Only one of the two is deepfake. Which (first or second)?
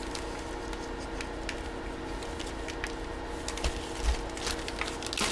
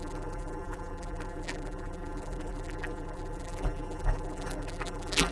second